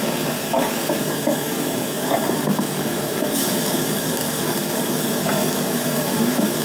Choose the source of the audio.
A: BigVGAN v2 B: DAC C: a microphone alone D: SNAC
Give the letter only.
B